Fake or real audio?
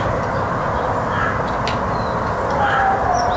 real